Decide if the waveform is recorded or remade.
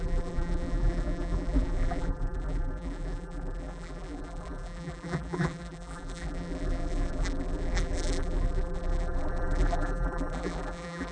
remade